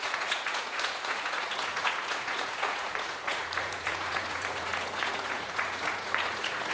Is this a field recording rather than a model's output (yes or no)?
no